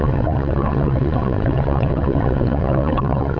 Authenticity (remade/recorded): remade